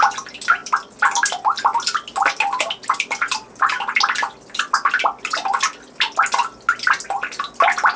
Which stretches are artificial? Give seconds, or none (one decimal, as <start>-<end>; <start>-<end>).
none